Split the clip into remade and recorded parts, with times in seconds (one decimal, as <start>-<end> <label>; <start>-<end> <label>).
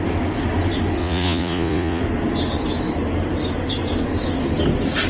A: 0.0-1.0 recorded; 1.0-2.0 remade; 2.0-5.1 recorded